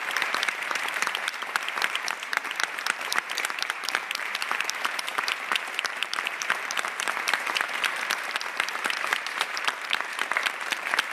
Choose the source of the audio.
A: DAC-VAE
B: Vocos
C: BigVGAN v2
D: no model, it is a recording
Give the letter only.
C